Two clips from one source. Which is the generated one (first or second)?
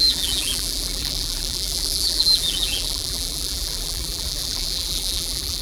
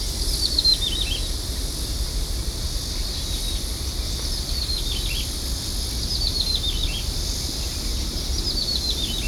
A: first